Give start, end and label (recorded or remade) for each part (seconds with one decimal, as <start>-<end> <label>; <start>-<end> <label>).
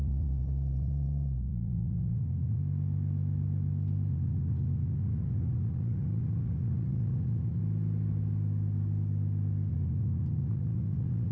0.0-2.6 remade; 2.6-4.1 recorded; 4.1-7.6 remade; 7.6-9.7 recorded; 9.7-11.3 remade